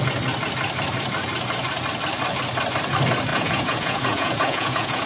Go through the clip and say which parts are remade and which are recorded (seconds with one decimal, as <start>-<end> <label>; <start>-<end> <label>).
0.0-3.3 recorded; 3.3-5.1 remade